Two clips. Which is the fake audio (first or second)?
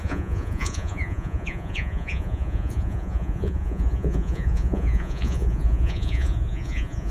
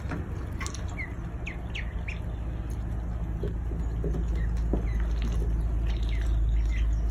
first